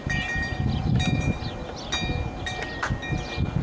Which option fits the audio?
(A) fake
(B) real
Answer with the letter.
B